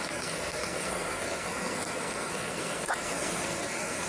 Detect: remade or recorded remade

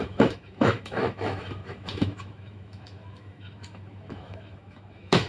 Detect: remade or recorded remade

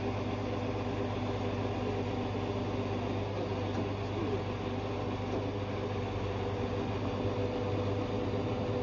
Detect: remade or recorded recorded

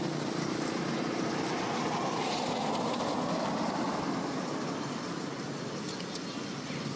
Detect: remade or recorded recorded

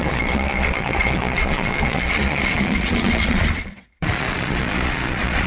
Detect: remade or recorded remade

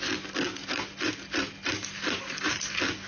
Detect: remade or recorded recorded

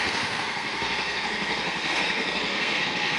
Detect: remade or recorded remade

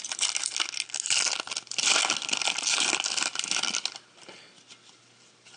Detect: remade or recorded recorded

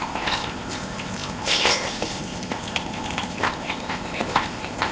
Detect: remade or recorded remade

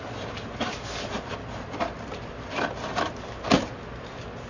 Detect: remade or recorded recorded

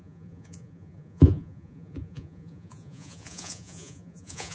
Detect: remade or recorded remade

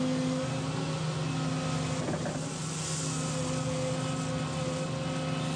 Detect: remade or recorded recorded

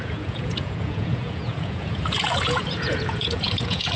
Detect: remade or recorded remade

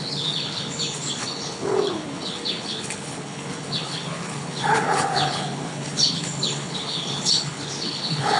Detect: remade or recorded remade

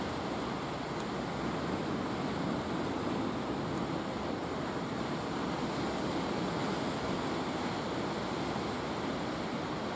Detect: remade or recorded recorded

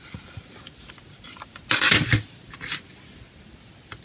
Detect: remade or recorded recorded